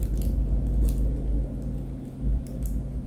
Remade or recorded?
recorded